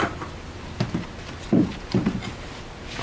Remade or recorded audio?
recorded